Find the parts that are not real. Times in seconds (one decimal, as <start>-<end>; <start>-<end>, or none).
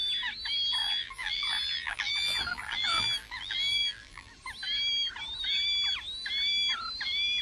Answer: 0.8-4.3